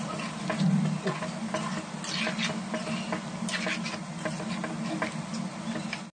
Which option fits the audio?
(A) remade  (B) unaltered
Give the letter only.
B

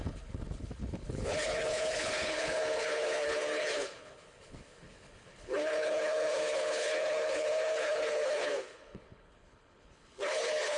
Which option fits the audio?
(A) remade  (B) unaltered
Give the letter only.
A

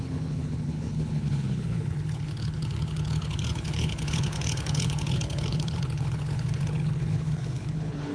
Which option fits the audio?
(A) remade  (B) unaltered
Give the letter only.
A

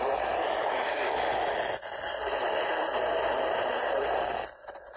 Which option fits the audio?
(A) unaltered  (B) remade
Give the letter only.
A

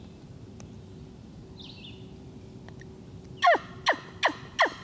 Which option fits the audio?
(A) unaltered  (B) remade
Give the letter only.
A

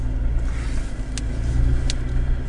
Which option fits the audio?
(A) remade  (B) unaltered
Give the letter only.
B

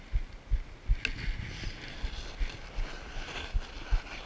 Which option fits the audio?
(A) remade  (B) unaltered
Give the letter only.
B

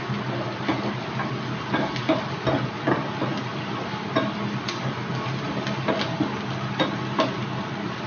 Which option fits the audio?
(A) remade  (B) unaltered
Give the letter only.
B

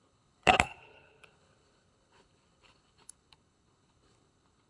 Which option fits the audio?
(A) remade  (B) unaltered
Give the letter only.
A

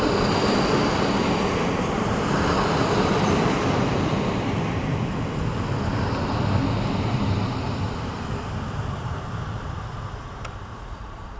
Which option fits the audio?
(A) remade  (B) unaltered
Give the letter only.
B